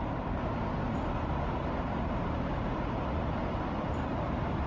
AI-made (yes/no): no